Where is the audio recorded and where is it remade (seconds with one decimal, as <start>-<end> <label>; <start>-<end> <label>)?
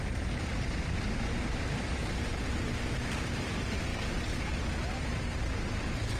0.0-6.2 recorded